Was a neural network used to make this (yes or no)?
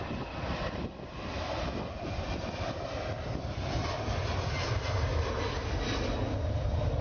no